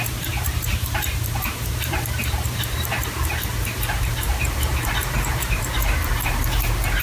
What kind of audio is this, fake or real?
fake